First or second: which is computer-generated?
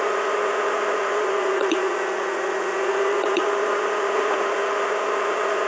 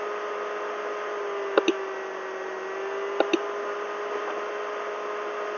first